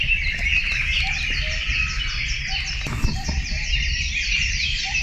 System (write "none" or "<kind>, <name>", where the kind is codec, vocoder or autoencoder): none